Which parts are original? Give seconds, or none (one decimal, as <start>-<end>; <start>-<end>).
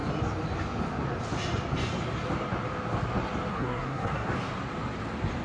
0.0-3.5; 4.3-5.4